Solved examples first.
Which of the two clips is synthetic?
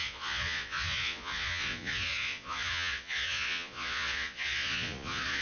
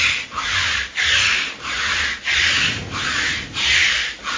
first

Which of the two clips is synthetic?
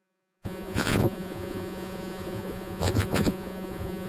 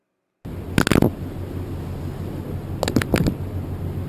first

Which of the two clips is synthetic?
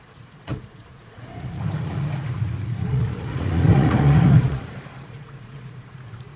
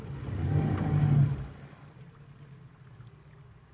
first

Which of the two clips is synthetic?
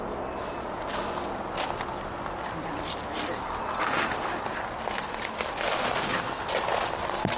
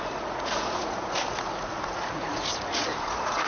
second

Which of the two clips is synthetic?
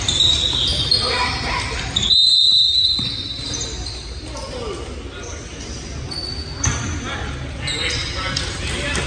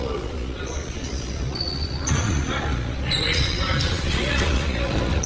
second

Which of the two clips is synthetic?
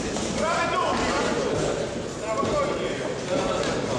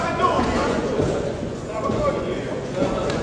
second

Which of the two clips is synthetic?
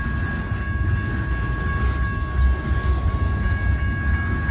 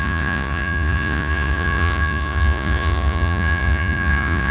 second